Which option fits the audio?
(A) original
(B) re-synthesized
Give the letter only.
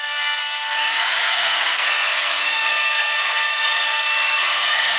B